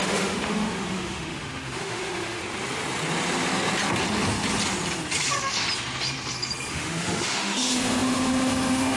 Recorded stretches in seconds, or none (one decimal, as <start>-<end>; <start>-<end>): 2.4-6.7

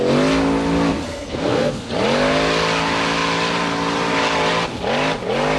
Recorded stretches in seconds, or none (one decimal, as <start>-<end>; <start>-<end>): 0.0-0.9; 1.9-5.6

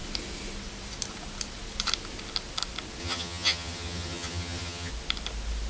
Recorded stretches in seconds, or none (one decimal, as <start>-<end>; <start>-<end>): 0.0-3.0; 4.9-5.7